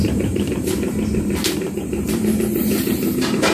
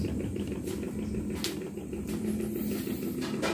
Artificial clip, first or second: first